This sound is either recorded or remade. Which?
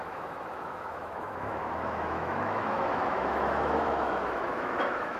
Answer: remade